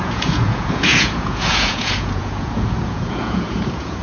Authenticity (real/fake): fake